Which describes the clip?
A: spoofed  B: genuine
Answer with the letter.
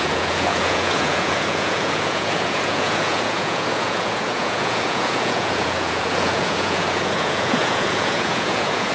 A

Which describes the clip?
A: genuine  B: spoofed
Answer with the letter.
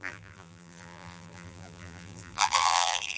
B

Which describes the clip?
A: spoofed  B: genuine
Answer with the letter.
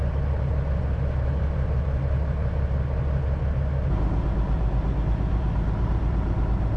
B